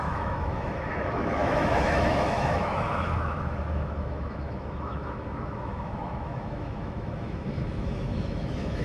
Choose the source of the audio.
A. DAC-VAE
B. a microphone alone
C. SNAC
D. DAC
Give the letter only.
A